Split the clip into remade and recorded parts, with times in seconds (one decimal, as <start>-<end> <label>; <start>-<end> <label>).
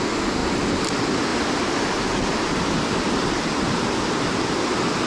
0.0-5.1 recorded